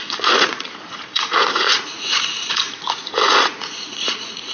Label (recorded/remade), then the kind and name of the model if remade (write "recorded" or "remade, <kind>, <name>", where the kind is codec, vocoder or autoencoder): remade, vocoder, Vocos